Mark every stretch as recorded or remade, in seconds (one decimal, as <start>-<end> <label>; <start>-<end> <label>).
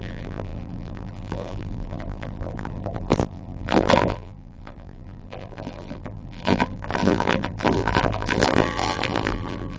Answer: 0.0-9.8 remade